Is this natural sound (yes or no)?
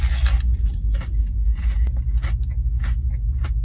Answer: yes